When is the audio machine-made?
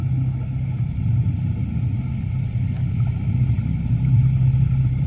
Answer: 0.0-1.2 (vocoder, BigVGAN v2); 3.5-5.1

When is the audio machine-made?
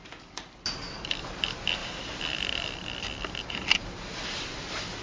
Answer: 1.8-3.0 (vocoder, BigVGAN v2); 3.8-5.0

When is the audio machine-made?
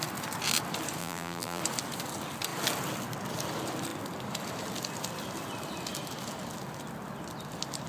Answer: 1.0-1.6 (vocoder, BigVGAN v2)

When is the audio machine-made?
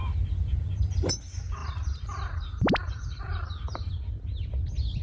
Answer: 0.0-1.1 (vocoder, BigVGAN v2); 1.6-3.9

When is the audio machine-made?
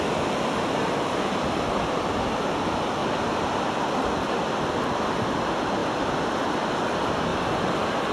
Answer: 5.8-6.3 (vocoder, BigVGAN v2); 7.3-8.1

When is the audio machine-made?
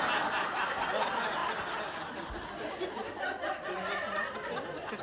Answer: 1.4-3.2 (vocoder, BigVGAN v2)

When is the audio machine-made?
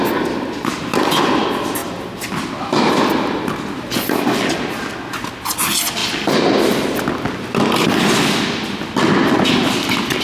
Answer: none